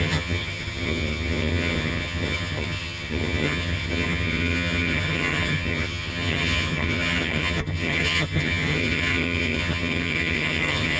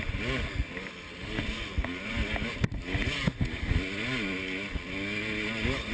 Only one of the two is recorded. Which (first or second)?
second